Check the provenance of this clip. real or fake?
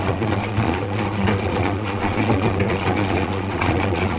fake